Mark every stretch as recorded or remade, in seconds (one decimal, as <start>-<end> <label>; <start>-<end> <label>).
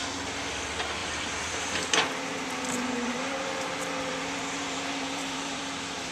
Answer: 0.0-1.0 recorded; 1.0-1.6 remade; 1.6-2.3 recorded; 2.3-6.1 remade